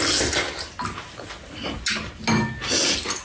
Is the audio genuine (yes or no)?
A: yes